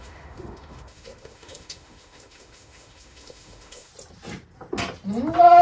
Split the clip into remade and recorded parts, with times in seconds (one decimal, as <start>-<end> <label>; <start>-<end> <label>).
0.0-3.9 remade; 3.9-5.6 recorded